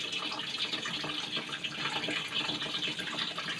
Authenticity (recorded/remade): recorded